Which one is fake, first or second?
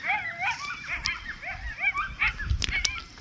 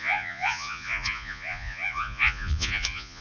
second